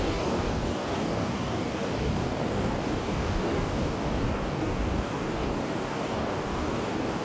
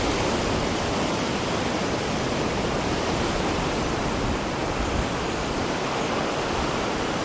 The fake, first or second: first